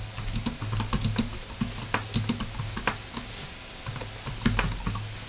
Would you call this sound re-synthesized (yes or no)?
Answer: no